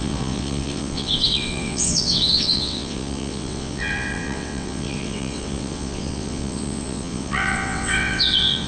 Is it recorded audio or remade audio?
remade